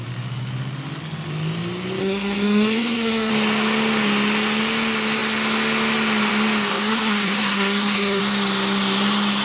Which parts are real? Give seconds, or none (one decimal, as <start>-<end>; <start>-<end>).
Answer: 0.0-2.0; 3.3-6.7; 8.2-9.4